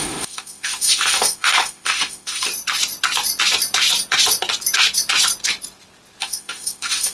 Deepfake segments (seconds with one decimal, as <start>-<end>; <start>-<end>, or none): 0.0-2.5; 6.2-7.1